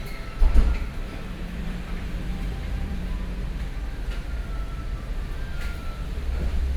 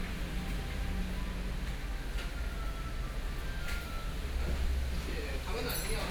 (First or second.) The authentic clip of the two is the second